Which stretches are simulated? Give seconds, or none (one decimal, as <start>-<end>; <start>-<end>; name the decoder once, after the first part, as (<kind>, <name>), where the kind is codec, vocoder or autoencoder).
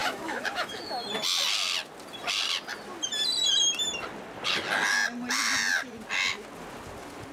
0.0-0.9 (autoencoder, DAC-VAE)